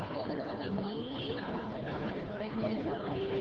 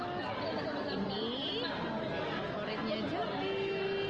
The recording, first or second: second